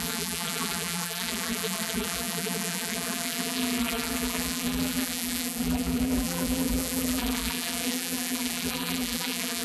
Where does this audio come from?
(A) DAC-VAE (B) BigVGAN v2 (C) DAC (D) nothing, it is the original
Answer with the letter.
B